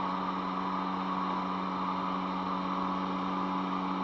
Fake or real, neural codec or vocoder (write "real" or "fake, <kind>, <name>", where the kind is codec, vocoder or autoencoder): real